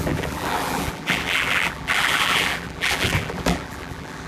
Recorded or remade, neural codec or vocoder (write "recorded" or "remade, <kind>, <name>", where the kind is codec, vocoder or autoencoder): remade, vocoder, BigVGAN v2